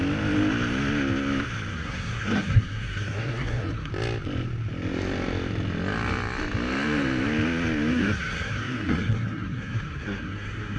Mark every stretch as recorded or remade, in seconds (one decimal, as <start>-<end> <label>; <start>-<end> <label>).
0.0-1.7 recorded; 1.7-3.9 remade; 3.9-7.9 recorded; 7.9-10.8 remade